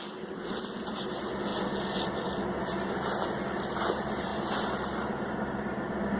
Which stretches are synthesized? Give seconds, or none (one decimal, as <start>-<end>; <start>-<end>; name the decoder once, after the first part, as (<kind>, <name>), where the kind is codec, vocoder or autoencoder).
none